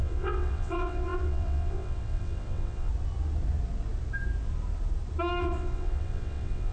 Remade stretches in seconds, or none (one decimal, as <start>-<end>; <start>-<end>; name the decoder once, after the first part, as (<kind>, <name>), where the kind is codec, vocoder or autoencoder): 0.0-2.9 (vocoder, WaveNeXt); 5.4-6.7